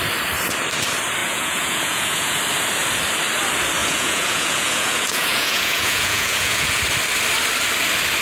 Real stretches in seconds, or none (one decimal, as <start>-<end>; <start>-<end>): 0.0-1.2; 2.4-3.8; 6.8-8.2